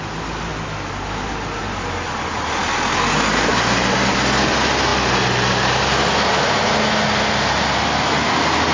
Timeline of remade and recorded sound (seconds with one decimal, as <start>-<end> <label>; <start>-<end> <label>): 0.0-8.7 recorded